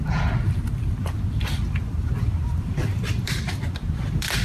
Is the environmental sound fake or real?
fake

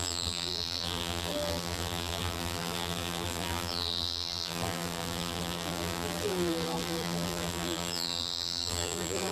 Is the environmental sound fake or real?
fake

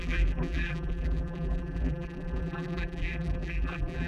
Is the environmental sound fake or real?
fake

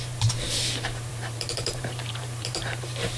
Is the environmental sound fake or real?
fake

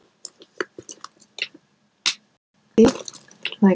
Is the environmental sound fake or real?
real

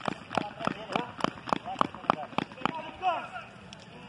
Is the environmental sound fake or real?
real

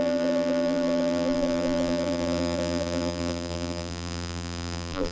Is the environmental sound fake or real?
fake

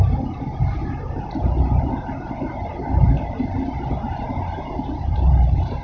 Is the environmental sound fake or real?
fake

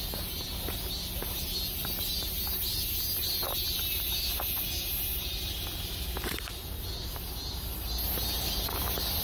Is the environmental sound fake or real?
real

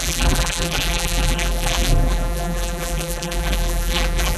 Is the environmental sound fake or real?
fake